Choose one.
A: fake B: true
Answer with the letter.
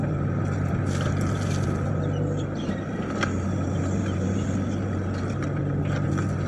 B